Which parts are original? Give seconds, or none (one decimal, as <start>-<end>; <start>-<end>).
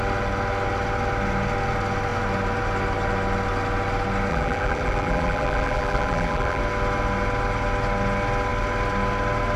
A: 0.0-4.3; 6.6-9.6